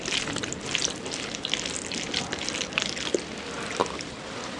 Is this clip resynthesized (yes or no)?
no